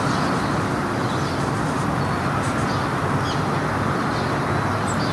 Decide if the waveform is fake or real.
real